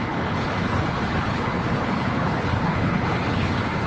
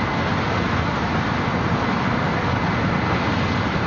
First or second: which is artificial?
first